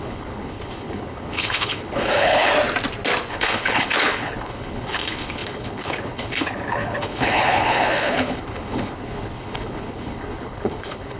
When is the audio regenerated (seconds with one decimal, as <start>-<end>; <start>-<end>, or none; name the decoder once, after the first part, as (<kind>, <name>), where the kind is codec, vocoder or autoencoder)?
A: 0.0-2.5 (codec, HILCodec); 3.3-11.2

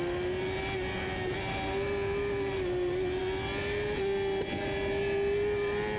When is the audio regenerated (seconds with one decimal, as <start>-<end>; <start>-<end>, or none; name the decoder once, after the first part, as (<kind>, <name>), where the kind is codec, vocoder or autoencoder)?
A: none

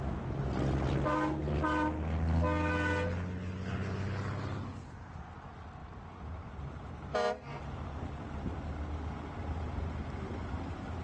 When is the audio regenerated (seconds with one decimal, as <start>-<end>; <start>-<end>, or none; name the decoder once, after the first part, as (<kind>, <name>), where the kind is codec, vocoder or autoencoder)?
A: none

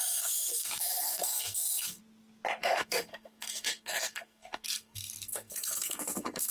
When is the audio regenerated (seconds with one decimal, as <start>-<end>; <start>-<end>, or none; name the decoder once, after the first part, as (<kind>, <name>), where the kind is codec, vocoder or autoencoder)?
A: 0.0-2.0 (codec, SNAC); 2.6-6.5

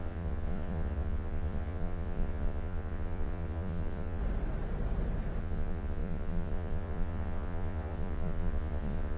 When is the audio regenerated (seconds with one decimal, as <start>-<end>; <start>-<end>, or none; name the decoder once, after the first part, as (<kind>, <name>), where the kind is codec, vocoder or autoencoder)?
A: 0.0-4.2 (vocoder, Vocos); 5.4-9.2

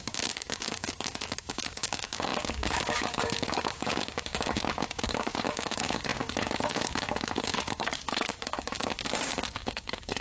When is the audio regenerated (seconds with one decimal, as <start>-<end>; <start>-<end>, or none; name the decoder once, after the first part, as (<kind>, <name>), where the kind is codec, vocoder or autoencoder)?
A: 0.0-10.2 (codec, DAC)

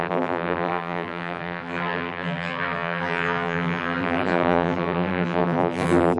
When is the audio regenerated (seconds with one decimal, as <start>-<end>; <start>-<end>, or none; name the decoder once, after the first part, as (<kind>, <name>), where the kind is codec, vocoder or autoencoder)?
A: 0.0-6.2 (vocoder, BigVGAN v2)

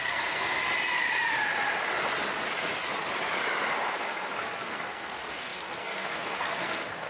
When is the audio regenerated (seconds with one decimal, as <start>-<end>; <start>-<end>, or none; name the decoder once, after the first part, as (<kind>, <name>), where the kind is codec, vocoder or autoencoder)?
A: 0.0-0.4 (codec, SNAC); 3.9-7.1